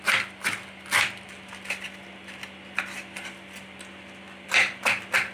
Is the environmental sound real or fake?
real